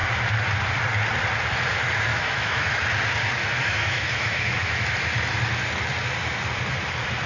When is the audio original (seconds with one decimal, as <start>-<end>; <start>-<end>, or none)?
0.0-2.1; 2.7-3.4; 4.8-7.3